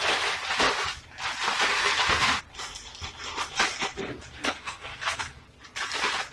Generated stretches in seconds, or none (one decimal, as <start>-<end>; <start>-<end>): 1.7-2.4; 4.4-5.2